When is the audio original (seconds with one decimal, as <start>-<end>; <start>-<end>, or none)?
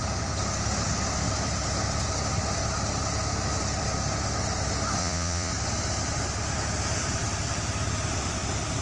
0.0-5.0; 5.5-8.8